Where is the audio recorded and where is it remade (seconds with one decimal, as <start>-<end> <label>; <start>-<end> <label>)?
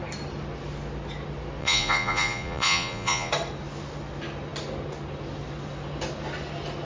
0.0-1.6 recorded; 1.6-3.3 remade; 3.3-6.8 recorded